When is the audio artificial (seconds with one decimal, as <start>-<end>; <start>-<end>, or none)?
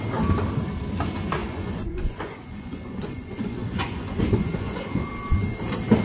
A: 1.4-5.0